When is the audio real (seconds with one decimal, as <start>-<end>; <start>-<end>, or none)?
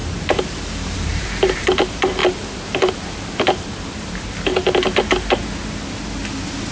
4.5-6.7